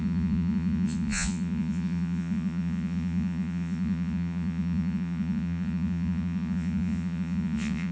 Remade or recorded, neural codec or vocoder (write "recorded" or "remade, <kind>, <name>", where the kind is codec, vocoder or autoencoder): remade, vocoder, Vocos